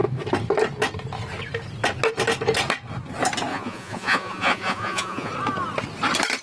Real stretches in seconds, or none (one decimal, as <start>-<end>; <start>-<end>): 0.0-3.5; 5.3-6.4